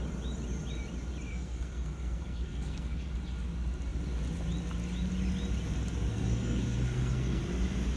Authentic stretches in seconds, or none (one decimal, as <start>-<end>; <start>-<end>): 0.0-1.3; 3.1-6.1; 7.4-8.0